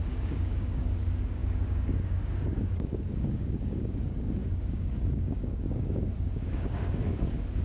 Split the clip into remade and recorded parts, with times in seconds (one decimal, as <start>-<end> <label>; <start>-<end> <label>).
0.0-7.6 remade